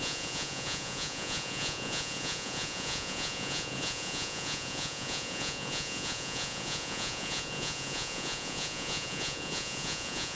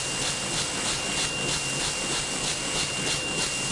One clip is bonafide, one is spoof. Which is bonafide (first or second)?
second